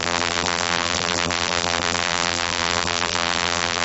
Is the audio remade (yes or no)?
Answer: yes